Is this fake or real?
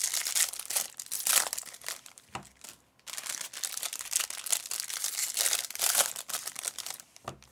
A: real